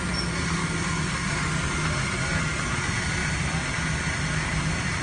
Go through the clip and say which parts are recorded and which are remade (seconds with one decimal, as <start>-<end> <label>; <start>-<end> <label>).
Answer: 0.0-0.6 recorded; 0.6-1.3 remade; 1.3-5.0 recorded